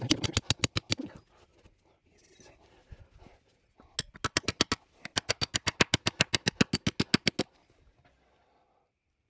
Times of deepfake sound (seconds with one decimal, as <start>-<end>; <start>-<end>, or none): none

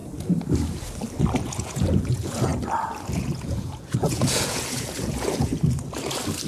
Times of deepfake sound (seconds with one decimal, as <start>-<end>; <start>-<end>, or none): 1.4-2.5; 3.1-5.5

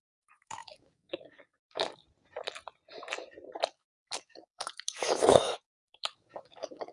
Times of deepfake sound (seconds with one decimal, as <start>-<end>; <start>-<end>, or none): 0.0-2.0; 3.7-6.9

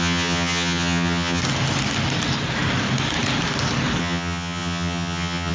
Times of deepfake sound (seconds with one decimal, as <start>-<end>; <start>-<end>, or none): 0.0-1.4; 4.0-5.5

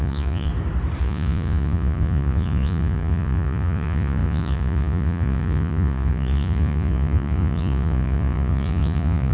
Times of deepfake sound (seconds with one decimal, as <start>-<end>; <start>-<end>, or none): 0.0-0.5; 1.0-9.3